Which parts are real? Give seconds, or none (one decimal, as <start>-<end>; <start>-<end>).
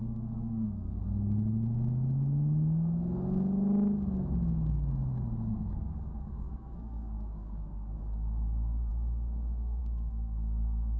1.0-5.5